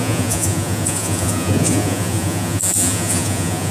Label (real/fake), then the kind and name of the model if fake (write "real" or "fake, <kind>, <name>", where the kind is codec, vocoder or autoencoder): fake, vocoder, Vocos